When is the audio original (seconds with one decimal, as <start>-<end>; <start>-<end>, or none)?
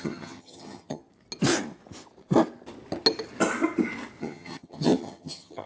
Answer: 1.0-4.2